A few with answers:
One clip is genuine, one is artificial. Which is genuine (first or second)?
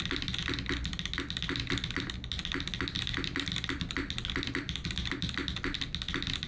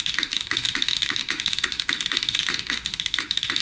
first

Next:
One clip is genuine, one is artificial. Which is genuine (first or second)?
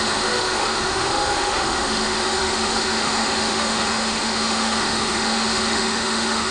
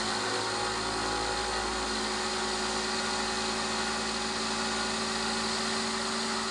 second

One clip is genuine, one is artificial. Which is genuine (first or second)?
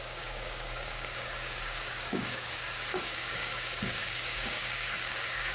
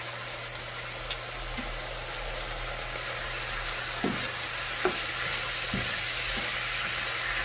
second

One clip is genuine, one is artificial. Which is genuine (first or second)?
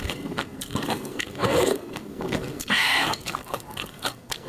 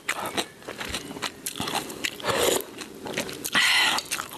second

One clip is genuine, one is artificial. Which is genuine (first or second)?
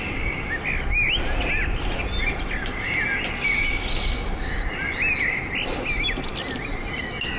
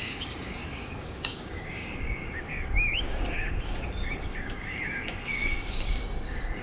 first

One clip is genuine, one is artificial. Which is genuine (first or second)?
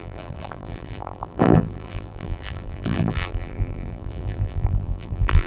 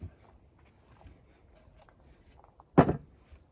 second